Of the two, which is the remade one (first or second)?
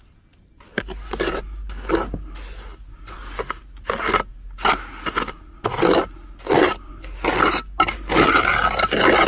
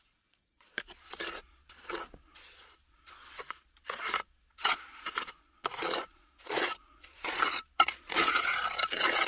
second